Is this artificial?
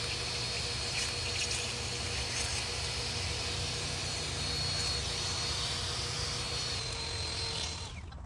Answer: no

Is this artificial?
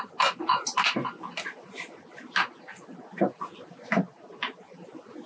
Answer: no